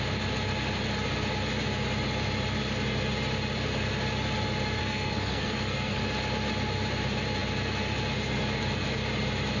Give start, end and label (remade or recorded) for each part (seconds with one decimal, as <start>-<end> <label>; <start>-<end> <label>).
0.0-4.8 recorded; 4.8-6.0 remade; 6.0-9.6 recorded